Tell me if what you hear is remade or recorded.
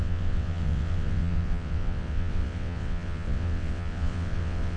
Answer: remade